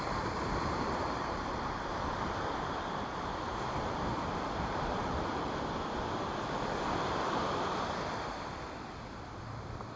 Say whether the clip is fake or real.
fake